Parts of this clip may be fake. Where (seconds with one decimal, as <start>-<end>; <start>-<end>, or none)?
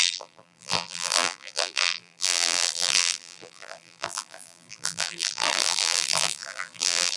0.0-7.2